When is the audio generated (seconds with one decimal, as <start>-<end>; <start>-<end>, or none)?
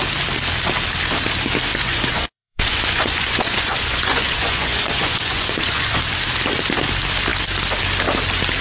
1.7-6.0